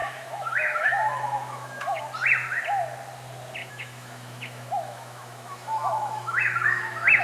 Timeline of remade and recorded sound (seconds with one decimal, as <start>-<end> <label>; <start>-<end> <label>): 0.0-2.0 remade; 2.0-3.6 recorded; 3.6-7.2 remade